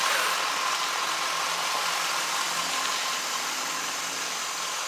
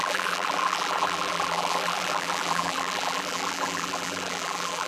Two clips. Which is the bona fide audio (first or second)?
first